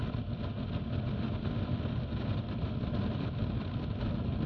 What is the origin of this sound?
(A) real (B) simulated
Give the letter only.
A